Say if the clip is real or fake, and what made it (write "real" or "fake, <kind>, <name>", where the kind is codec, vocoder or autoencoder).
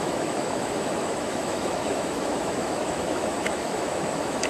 fake, autoencoder, DAC-VAE